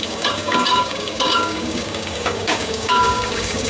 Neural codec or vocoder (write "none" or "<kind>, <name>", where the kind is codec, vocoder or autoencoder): codec, DAC